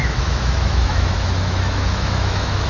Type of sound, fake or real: fake